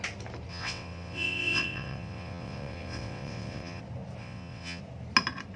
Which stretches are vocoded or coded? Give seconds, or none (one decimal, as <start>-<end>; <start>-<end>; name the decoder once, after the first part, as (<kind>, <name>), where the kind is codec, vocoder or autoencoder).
0.5-3.8 (vocoder, WaveNeXt); 4.2-4.8